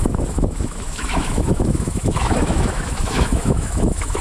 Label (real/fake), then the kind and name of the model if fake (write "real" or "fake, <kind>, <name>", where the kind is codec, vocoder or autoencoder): fake, autoencoder, DAC-VAE